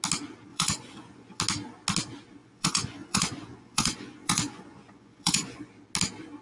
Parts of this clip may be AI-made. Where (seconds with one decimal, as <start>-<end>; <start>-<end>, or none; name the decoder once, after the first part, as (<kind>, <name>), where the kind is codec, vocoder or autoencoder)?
0.5-1.4 (vocoder, Vocos); 2.4-5.7